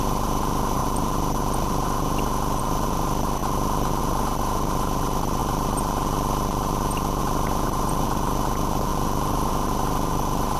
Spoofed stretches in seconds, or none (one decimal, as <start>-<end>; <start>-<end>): 8.9-9.5